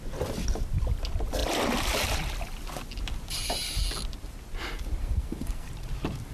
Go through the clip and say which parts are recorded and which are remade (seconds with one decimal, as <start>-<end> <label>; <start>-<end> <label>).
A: 0.0-5.0 recorded; 5.0-5.7 remade; 5.7-6.3 recorded

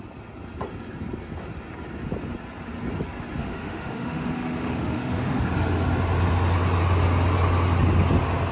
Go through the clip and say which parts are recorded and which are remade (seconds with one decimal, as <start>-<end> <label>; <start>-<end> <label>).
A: 0.0-3.4 recorded; 3.4-5.4 remade; 5.4-8.5 recorded